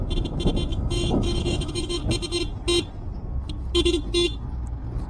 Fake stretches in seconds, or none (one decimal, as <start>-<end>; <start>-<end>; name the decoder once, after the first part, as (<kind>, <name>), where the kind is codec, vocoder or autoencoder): 0.7-2.0 (autoencoder, DAC-VAE)